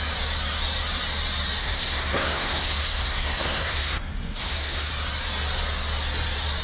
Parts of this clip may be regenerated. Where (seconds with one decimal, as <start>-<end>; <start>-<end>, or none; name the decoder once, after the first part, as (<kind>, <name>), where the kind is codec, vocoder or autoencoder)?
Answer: 1.6-4.9 (codec, SNAC)